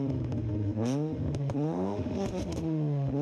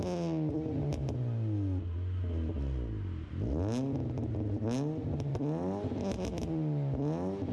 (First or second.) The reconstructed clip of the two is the first